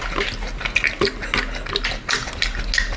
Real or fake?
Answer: real